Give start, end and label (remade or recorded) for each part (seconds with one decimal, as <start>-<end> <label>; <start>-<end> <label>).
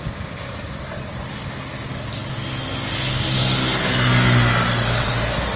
0.0-5.6 recorded